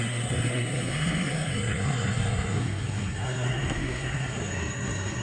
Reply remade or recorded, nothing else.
remade